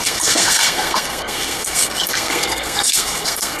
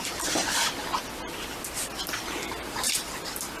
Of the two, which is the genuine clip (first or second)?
second